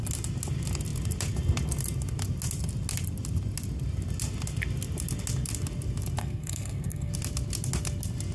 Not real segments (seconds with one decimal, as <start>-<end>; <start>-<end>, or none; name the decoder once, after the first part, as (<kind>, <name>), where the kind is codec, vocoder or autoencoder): 6.2-7.1 (codec, SNAC)